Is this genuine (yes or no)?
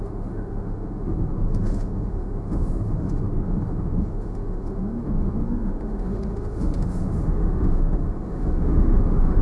no